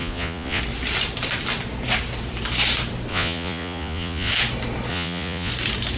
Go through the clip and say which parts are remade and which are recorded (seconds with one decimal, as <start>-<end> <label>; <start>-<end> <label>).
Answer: 0.0-0.6 remade; 0.6-3.1 recorded; 3.1-4.3 remade; 4.3-4.9 recorded; 4.9-5.5 remade; 5.5-6.0 recorded